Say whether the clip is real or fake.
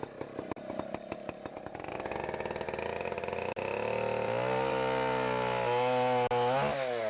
real